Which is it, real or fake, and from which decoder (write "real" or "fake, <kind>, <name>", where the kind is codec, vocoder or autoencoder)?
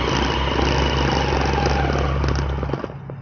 real